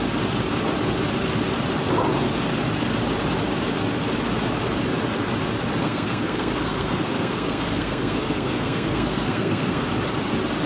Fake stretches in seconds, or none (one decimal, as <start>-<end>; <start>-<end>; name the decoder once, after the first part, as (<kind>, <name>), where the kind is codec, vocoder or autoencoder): 5.8-9.9 (codec, SNAC)